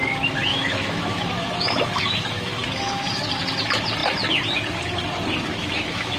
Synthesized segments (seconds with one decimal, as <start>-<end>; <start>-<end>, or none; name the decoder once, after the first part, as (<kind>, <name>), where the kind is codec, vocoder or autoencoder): 0.5-3.4 (autoencoder, DAC-VAE); 5.5-6.2